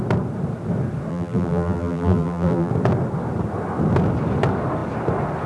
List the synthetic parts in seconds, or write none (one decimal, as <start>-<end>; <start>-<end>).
1.1-2.7